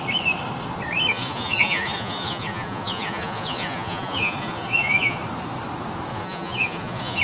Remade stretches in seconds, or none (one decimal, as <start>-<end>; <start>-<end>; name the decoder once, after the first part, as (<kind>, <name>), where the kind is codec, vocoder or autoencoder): 1.1-5.2 (vocoder, Vocos); 6.1-7.2